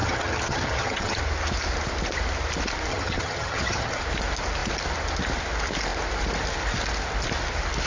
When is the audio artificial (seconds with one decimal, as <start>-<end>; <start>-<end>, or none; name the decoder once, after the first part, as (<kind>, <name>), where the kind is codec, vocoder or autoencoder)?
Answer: 0.0-1.2 (vocoder, HiFi-GAN); 2.9-4.0